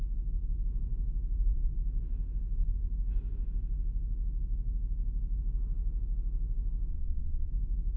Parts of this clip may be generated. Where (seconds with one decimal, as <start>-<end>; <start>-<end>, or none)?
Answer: 6.9-7.5